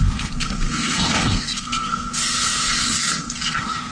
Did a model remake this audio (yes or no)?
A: yes